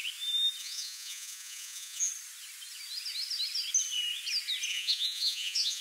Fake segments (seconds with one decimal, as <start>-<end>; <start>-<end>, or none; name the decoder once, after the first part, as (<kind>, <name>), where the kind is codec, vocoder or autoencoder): 0.6-2.1 (vocoder, Vocos); 4.7-5.8